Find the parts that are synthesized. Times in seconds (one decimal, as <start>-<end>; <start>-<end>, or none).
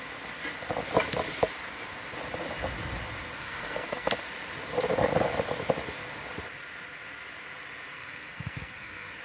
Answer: 3.4-4.1; 7.9-9.2